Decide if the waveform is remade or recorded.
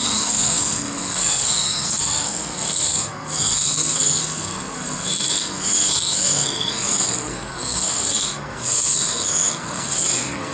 remade